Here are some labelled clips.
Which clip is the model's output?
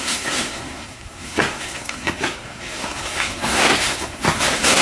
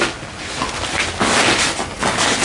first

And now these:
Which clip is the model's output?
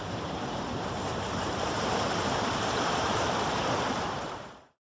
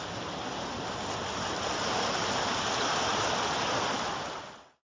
first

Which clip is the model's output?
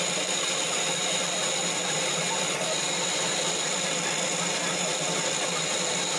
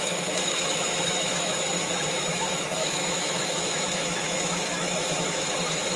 second